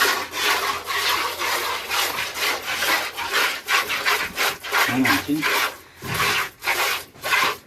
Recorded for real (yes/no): yes